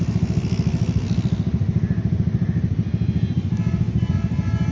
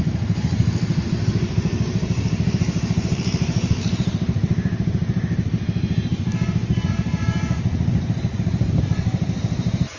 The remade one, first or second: second